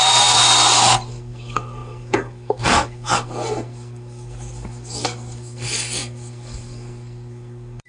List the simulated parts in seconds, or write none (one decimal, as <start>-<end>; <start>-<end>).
0.0-0.4; 1.1-7.9